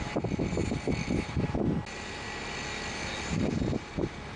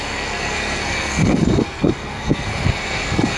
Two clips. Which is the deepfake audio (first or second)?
second